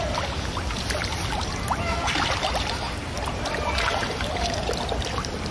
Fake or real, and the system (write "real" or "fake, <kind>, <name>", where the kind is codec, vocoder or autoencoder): real